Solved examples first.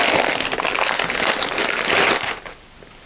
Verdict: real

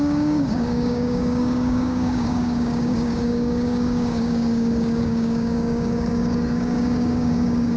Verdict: fake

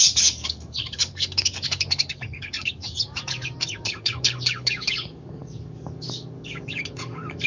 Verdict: fake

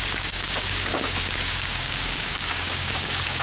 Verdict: fake